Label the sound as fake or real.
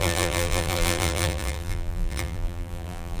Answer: fake